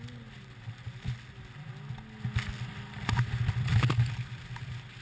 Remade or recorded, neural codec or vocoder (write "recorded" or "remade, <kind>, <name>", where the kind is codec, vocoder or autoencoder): recorded